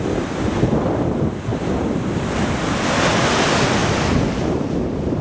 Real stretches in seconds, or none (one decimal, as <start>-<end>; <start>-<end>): 1.5-3.4; 3.8-4.3